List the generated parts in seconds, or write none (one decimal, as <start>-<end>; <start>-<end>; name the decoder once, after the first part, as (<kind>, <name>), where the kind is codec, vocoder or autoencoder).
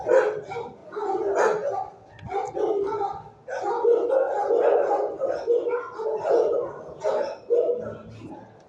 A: none